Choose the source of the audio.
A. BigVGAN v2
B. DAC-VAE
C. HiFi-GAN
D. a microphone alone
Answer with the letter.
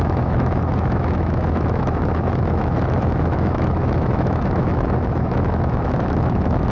B